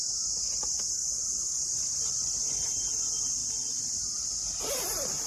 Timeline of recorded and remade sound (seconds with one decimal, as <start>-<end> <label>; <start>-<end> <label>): 0.0-1.0 recorded; 1.0-1.8 remade; 1.8-5.3 recorded